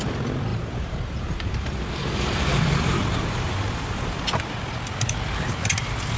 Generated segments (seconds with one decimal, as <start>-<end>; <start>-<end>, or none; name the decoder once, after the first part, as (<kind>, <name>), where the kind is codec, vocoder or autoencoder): 0.5-4.2 (vocoder, BigVGAN v2)